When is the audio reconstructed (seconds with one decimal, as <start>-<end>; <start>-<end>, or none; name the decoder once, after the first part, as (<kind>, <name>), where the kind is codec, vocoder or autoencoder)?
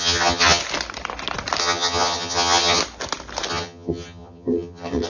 0.0-0.6 (vocoder, HiFi-GAN); 1.6-2.8; 3.5-5.1